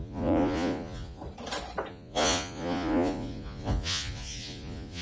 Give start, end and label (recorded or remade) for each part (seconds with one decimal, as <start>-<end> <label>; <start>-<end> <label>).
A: 0.0-1.2 remade; 1.2-1.9 recorded; 1.9-5.0 remade